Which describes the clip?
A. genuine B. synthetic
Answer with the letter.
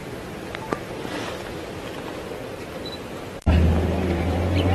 B